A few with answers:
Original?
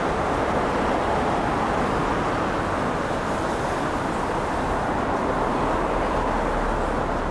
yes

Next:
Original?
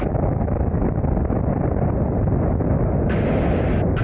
yes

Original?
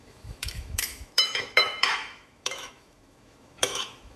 no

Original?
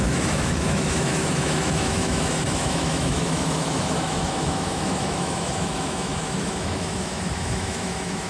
no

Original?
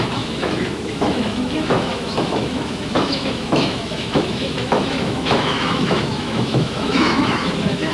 no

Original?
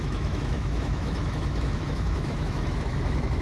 no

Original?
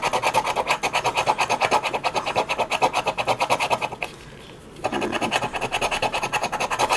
yes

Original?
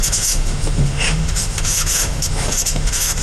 no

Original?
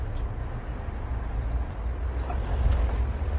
yes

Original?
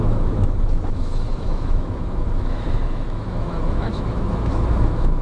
no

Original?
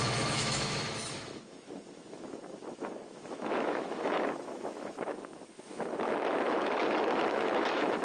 no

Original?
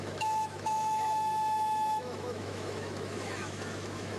no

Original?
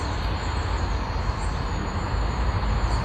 yes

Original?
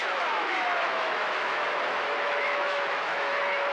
no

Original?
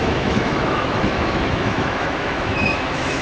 no